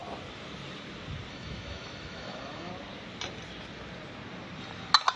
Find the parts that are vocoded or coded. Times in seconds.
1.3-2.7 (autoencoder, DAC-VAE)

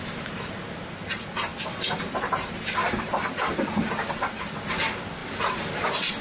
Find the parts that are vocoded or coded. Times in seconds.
1.5-2.2 (vocoder, BigVGAN v2); 2.8-4.4; 5.2-6.2